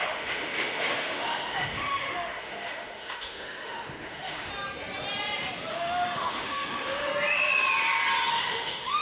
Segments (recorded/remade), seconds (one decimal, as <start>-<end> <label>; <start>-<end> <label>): 0.0-4.5 remade; 4.5-5.7 recorded; 5.7-7.1 remade; 7.1-8.3 recorded; 8.3-9.0 remade